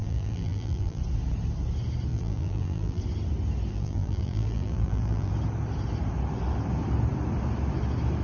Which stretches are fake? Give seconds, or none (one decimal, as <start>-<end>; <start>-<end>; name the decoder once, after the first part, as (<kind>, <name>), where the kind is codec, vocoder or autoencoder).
0.0-1.0 (vocoder, BigVGAN v2); 2.1-3.0; 3.7-5.3